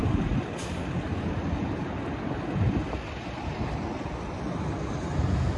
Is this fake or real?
real